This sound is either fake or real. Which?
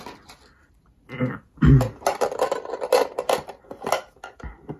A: real